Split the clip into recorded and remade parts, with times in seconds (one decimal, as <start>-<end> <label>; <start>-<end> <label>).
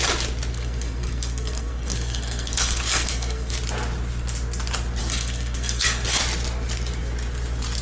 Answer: 0.0-0.5 recorded; 0.5-3.5 remade; 3.5-5.0 recorded; 5.0-6.2 remade; 6.2-7.8 recorded